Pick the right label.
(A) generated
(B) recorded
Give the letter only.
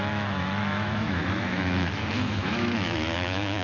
A